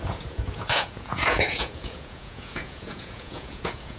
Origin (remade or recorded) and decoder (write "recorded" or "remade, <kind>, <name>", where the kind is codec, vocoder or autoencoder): remade, vocoder, Vocos